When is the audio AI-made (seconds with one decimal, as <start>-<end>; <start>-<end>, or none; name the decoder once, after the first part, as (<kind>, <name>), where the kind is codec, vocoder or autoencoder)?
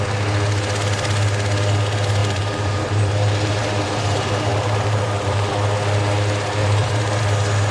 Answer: 2.2-5.5 (vocoder, BigVGAN v2); 6.6-7.2